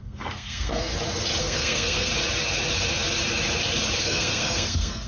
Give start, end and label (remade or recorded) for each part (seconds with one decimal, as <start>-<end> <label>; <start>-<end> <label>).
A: 0.0-0.9 remade; 0.9-1.4 recorded; 1.4-2.1 remade; 2.1-4.0 recorded; 4.0-5.1 remade